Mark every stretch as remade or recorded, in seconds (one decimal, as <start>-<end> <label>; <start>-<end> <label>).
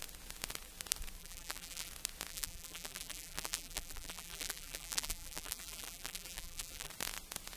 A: 0.0-1.2 recorded; 1.2-1.9 remade; 1.9-2.3 recorded; 2.3-6.9 remade; 6.9-7.6 recorded